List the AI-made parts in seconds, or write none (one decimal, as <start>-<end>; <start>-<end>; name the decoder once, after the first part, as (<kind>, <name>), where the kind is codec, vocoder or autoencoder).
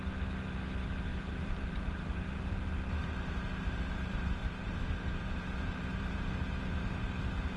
1.1-2.4 (vocoder, BigVGAN v2); 3.0-7.6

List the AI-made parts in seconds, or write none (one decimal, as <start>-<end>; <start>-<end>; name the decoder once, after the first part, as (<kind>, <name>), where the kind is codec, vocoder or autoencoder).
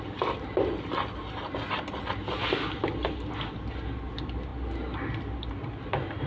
none